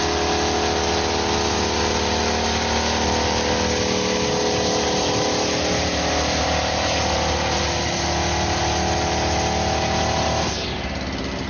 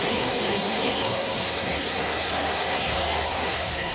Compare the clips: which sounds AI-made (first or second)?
second